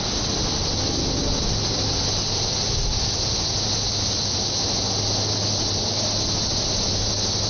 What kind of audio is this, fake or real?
real